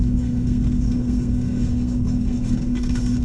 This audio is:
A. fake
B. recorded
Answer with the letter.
A